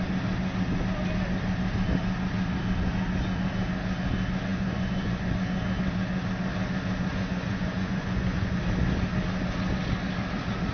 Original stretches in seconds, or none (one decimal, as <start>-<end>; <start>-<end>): 0.0-4.5; 5.3-7.1; 8.6-10.7